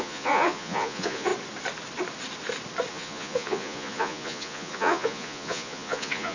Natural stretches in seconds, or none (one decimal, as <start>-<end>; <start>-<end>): 1.3-2.9